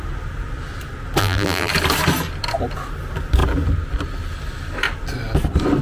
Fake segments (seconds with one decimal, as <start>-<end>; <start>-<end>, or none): 1.2-1.7